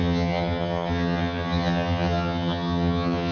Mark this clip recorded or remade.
remade